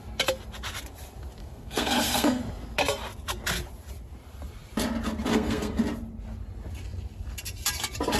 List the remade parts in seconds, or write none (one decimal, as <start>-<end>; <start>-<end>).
1.4-2.4; 5.3-5.8